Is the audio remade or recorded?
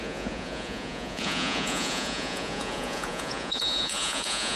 remade